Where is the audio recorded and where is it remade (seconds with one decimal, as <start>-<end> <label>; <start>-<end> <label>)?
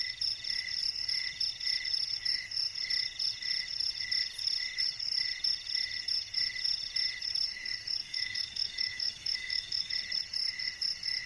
0.0-8.0 recorded; 8.0-9.9 remade; 9.9-11.3 recorded